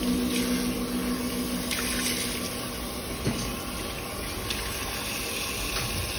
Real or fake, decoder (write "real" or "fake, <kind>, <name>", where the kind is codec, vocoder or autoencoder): real